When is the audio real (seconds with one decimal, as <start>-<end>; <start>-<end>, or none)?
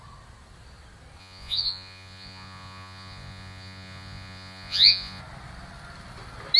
0.0-1.2; 5.2-6.6